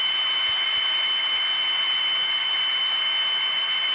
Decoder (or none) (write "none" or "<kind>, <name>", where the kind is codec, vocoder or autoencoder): none